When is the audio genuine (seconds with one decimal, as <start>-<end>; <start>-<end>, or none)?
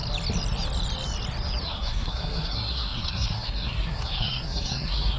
0.0-1.6